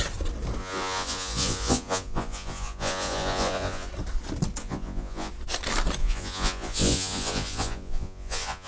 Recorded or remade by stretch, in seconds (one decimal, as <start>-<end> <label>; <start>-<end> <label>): 0.0-0.6 recorded; 0.6-3.9 remade; 3.9-4.6 recorded; 4.6-5.3 remade; 5.3-6.0 recorded; 6.0-8.7 remade